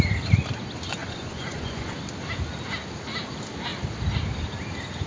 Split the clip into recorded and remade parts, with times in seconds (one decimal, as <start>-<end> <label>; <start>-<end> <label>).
0.0-1.0 recorded; 1.0-1.9 remade; 1.9-5.1 recorded